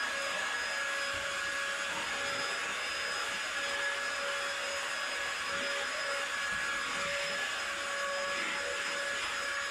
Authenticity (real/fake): real